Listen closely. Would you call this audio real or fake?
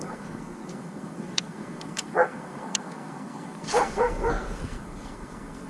fake